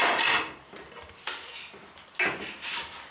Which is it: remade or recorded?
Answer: recorded